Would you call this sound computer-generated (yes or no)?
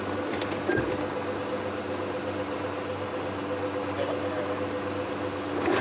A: no